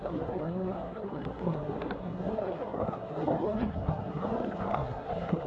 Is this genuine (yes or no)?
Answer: no